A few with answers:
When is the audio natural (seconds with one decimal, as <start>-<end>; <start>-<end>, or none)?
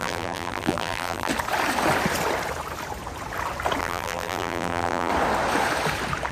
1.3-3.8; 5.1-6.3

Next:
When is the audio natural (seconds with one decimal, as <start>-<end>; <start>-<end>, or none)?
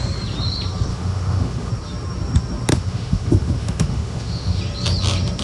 0.0-0.9; 1.7-2.7; 4.6-5.4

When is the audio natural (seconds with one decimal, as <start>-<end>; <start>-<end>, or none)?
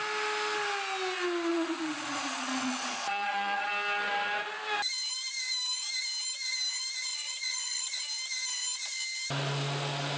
0.0-1.5; 3.7-7.1; 8.0-10.2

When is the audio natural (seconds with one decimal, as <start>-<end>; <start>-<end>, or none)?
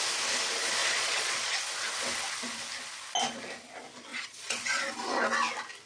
0.0-0.8; 1.6-4.1; 4.8-5.9